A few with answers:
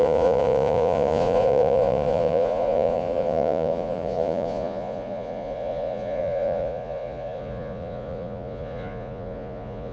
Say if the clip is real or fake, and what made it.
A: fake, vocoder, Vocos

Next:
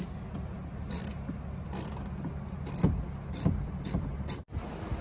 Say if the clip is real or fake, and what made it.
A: real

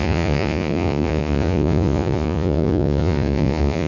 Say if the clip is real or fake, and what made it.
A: fake, vocoder, Vocos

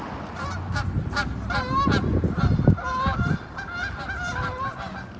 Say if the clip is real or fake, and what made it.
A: real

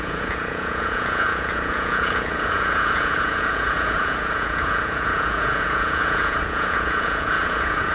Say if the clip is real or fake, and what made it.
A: fake, vocoder, Vocos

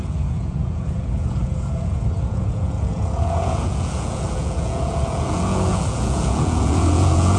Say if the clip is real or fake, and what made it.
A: fake, vocoder, Vocos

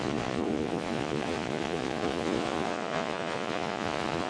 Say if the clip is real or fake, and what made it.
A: fake, vocoder, Vocos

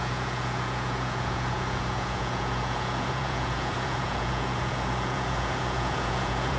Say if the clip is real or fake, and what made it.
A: fake, vocoder, Vocos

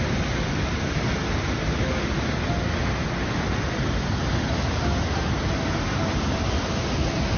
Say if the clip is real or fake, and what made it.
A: real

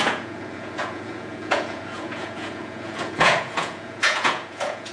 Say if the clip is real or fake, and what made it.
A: fake, vocoder, Vocos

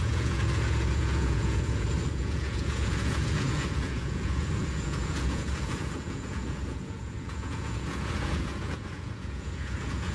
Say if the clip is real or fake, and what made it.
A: fake, vocoder, Vocos